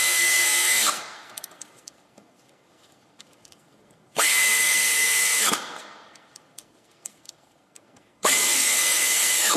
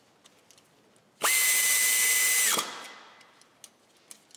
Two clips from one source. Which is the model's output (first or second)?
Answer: first